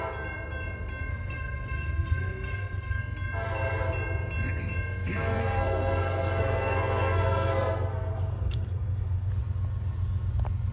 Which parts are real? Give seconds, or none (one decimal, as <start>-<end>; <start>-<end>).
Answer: 0.0-1.1; 3.0-5.4; 9.3-10.7